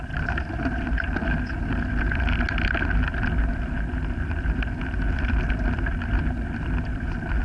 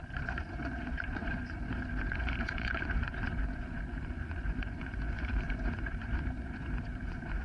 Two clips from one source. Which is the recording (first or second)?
first